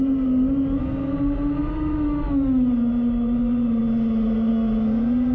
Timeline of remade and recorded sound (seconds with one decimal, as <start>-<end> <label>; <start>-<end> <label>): 0.0-1.6 recorded; 1.6-2.9 remade; 2.9-5.3 recorded